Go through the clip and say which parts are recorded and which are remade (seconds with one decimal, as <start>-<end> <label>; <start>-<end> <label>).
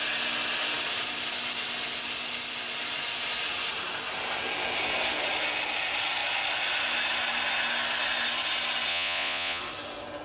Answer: 0.0-8.9 recorded; 8.9-9.6 remade; 9.6-10.2 recorded